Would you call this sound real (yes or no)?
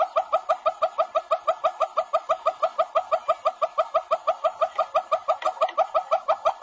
yes